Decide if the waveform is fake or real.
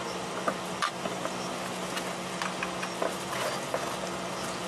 real